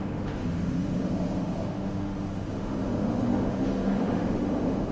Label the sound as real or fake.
fake